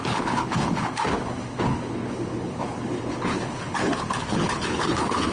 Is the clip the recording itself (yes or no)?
no